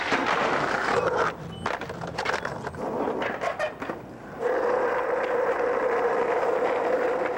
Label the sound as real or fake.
real